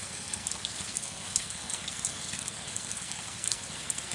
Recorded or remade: remade